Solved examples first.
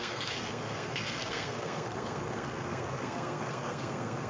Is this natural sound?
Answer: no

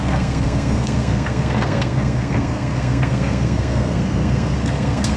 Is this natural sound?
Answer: no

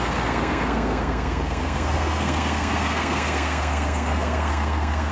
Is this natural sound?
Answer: no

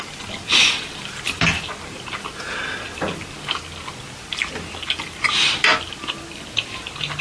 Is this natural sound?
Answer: yes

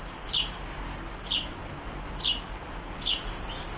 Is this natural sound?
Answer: yes